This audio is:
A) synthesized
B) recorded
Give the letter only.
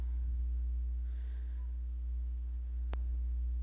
B